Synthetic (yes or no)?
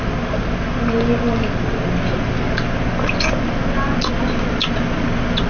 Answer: no